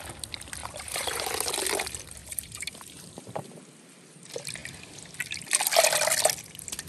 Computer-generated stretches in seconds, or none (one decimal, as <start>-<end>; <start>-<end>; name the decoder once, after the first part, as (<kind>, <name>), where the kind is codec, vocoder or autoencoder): 0.6-1.5 (vocoder, BigVGAN v2); 2.2-3.5